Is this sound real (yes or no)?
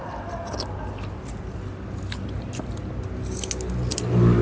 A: yes